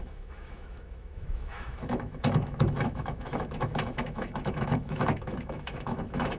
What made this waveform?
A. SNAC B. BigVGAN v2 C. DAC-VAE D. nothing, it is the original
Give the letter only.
C